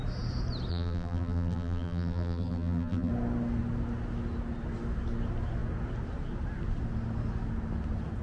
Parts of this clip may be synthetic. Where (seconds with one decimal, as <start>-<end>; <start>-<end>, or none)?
0.7-3.1